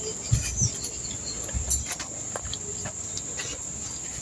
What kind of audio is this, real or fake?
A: real